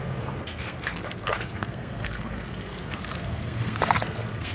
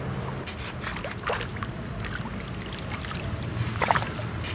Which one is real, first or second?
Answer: second